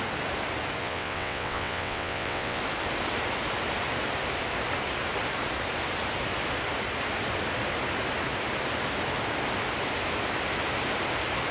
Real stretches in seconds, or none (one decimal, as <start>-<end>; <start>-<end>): 0.0-0.8; 2.6-11.5